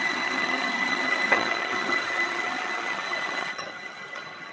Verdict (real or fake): fake